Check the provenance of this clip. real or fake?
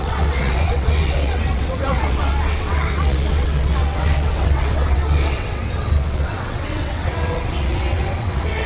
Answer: fake